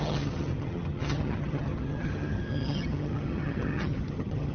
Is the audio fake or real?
fake